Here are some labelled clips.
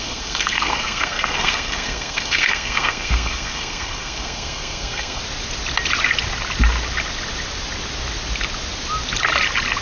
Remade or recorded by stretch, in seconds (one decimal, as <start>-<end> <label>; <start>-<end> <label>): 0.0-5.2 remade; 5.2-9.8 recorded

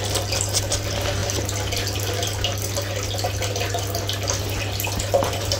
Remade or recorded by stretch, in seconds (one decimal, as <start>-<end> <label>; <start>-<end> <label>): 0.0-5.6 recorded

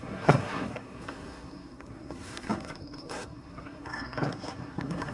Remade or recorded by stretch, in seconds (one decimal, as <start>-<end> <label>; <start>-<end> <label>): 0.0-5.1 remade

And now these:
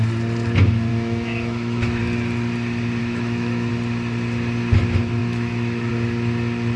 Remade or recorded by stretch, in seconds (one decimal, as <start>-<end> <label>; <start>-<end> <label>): 0.0-0.9 recorded; 0.9-2.0 remade; 2.0-3.0 recorded; 3.0-3.7 remade; 3.7-5.2 recorded; 5.2-5.9 remade; 5.9-6.8 recorded